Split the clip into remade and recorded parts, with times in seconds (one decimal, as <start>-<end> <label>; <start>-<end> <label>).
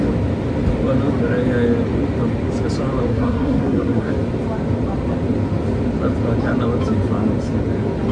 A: 0.0-3.1 recorded; 3.1-4.1 remade; 4.1-8.1 recorded